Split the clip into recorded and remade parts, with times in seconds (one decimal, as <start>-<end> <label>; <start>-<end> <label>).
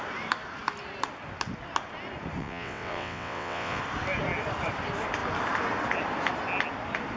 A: 0.0-2.4 recorded; 2.4-3.8 remade; 3.8-7.2 recorded